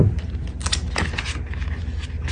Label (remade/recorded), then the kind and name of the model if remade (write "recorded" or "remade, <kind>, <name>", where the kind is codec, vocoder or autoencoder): recorded